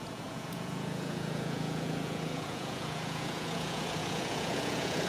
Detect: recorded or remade remade